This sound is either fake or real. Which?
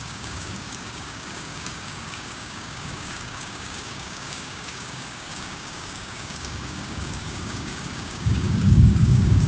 fake